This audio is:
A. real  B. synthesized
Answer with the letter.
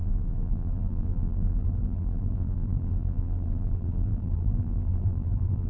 B